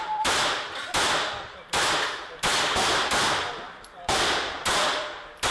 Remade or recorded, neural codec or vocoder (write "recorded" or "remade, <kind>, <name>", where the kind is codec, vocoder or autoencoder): remade, vocoder, BigVGAN v2